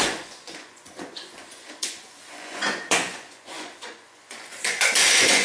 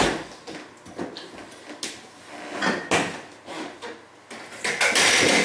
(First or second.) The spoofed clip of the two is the first